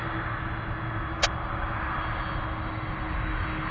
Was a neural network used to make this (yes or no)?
no